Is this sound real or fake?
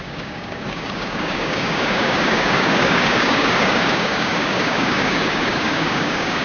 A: fake